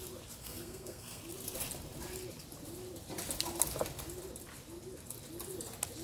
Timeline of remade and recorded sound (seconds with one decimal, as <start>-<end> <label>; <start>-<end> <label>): 0.0-0.4 recorded; 0.4-1.2 remade; 1.2-6.0 recorded